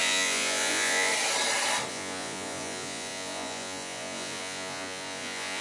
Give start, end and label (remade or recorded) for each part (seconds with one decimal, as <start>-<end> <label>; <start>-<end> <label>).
0.0-1.1 remade; 1.1-1.9 recorded; 1.9-5.6 remade